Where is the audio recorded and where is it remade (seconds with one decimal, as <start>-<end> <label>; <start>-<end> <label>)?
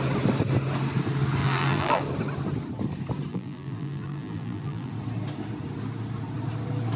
0.0-1.4 recorded; 1.4-2.0 remade; 2.0-3.3 recorded; 3.3-4.9 remade; 4.9-7.0 recorded